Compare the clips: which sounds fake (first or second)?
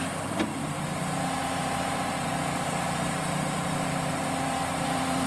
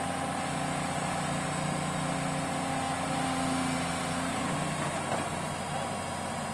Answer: first